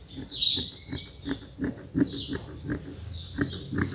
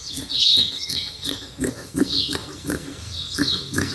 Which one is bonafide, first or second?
first